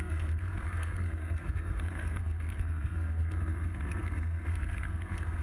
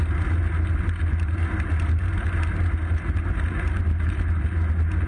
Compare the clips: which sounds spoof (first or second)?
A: first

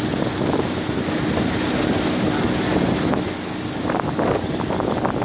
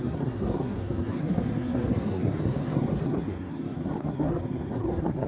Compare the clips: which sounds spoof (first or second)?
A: second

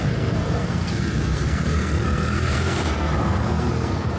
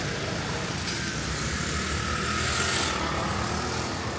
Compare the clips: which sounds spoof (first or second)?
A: first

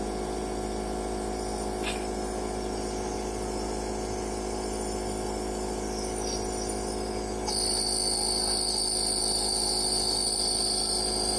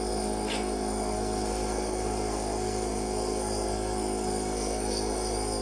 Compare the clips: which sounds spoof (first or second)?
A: second